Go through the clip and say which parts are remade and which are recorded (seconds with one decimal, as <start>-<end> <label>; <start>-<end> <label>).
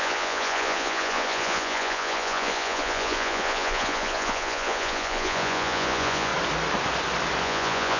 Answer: 0.0-6.3 remade; 6.3-7.4 recorded; 7.4-8.0 remade